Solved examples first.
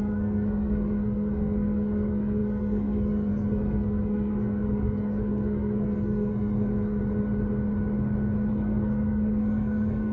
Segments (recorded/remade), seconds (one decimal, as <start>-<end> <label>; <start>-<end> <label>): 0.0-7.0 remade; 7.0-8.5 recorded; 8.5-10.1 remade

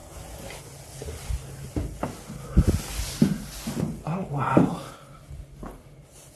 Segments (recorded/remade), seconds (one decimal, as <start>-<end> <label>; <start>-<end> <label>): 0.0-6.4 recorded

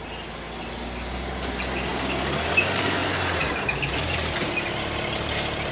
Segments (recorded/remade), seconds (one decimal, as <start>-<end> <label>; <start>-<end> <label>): 0.0-5.7 recorded